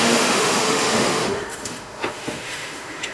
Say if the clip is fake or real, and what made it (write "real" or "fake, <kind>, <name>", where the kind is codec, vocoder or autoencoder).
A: fake, autoencoder, DAC-VAE